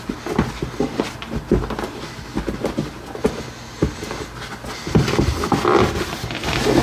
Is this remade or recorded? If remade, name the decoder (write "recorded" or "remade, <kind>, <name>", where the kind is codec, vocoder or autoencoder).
recorded